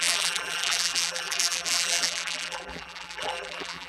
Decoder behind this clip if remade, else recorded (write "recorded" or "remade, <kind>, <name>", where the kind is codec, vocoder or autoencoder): remade, vocoder, BigVGAN v2